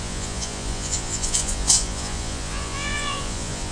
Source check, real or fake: fake